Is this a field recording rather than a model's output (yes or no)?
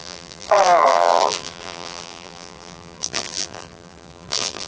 no